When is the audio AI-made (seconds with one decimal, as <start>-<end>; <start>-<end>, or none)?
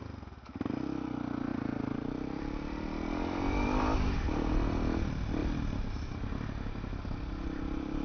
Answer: 1.5-4.5; 5.4-6.8